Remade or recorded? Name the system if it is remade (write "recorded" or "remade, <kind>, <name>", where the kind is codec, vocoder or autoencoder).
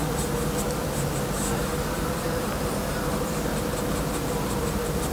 remade, vocoder, BigVGAN v2